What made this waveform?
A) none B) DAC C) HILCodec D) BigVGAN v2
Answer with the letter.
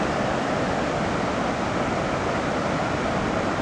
A